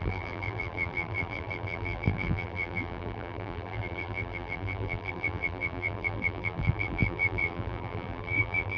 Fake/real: fake